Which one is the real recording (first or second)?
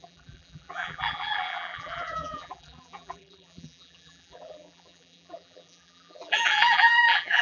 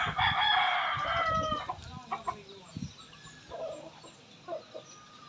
second